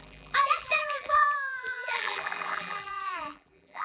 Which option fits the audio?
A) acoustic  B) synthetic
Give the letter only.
B